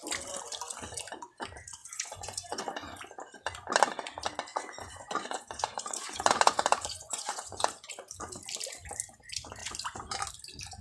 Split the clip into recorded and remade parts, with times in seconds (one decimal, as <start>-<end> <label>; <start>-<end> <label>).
0.0-1.8 recorded; 1.8-2.6 remade; 2.6-4.5 recorded; 4.5-7.9 remade; 7.9-10.8 recorded